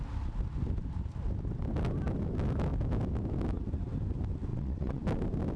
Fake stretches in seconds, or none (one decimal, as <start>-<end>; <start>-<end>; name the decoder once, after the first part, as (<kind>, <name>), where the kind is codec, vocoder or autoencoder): 4.5-5.0 (vocoder, WaveNeXt)